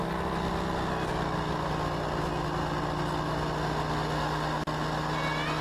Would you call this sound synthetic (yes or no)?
no